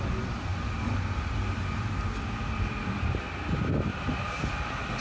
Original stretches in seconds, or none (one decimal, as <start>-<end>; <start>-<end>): 0.0-5.0